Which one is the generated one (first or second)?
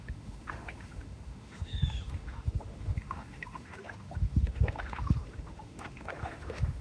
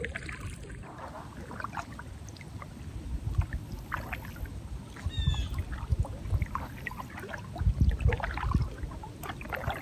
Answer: first